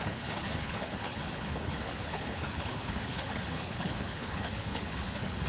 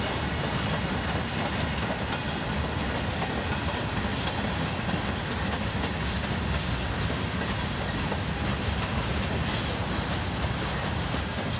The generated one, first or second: first